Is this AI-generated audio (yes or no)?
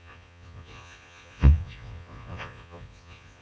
yes